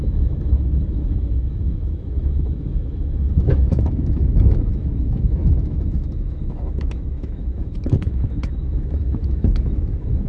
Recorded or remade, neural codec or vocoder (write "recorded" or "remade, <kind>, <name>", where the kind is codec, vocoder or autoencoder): remade, autoencoder, DAC-VAE